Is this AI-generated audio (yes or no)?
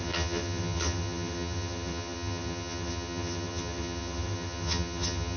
yes